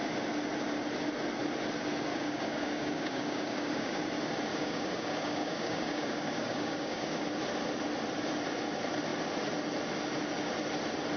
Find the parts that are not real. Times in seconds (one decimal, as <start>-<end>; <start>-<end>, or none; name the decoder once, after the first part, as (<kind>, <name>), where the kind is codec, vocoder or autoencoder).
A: 2.1-4.0 (codec, DAC); 4.5-7.2

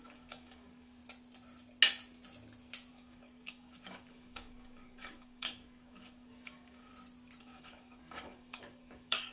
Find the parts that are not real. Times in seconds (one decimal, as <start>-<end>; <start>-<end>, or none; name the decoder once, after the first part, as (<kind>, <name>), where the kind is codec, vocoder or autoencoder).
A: 0.0-1.0 (codec, DAC); 2.9-6.9; 7.4-9.3

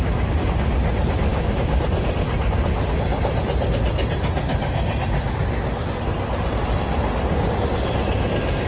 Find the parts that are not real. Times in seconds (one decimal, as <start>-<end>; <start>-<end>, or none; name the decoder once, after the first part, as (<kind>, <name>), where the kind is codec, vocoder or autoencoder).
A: 0.0-0.7 (codec, DAC); 1.3-1.8

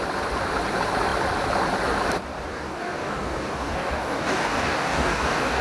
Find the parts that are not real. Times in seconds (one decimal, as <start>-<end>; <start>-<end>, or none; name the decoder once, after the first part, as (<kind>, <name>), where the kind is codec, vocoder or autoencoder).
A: 2.5-5.6 (codec, DAC)

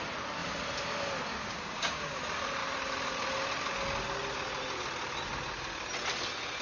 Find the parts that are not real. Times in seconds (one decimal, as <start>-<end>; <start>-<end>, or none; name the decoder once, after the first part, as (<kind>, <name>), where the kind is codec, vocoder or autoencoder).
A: 1.3-2.2 (codec, DAC)